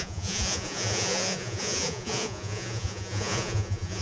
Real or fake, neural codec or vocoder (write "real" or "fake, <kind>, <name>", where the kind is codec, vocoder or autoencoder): fake, vocoder, Vocos